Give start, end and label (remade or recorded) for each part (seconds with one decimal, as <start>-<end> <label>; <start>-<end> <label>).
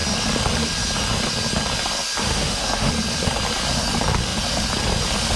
0.0-2.2 recorded; 2.2-2.9 remade; 2.9-5.4 recorded